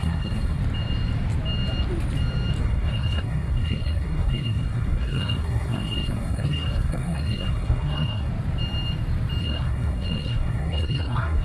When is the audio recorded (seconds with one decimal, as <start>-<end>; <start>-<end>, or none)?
0.6-2.6; 8.3-9.4